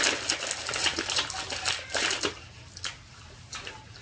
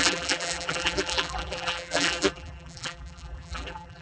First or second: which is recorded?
first